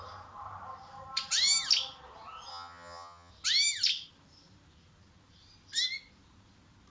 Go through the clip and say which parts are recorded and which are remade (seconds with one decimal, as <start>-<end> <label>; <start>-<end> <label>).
0.0-2.5 recorded; 2.5-3.3 remade; 3.3-6.9 recorded